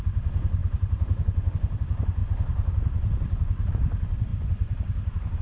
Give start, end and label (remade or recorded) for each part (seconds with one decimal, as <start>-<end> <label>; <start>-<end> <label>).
0.0-0.6 recorded; 0.6-1.5 remade; 1.5-2.2 recorded; 2.2-3.7 remade; 3.7-4.3 recorded; 4.3-5.4 remade